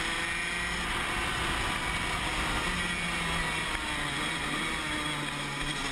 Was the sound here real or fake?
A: real